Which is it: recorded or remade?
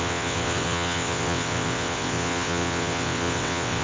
remade